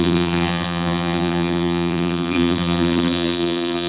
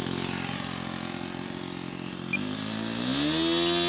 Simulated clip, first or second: first